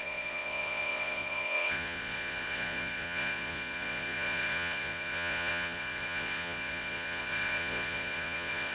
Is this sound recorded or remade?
remade